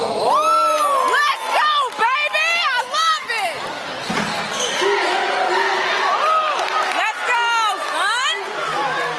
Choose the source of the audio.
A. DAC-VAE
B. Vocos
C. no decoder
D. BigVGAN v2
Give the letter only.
C